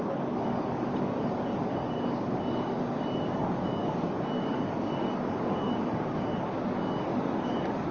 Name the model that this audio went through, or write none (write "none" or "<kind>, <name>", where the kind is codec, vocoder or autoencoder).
codec, DAC